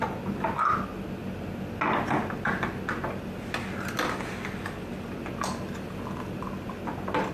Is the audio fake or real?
real